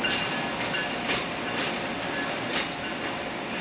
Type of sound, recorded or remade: recorded